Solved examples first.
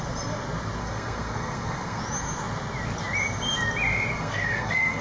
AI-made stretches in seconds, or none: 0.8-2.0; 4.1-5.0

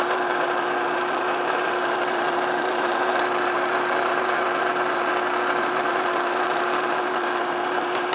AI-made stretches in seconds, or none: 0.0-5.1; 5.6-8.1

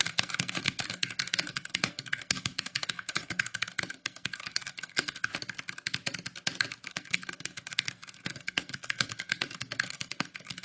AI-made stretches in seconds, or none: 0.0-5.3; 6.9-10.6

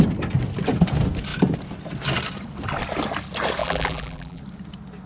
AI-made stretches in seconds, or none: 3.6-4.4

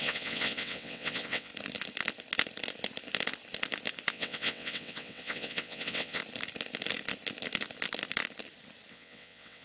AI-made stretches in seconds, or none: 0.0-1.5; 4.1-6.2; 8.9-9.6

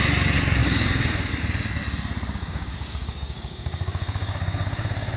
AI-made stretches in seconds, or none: 0.6-1.3; 2.4-5.2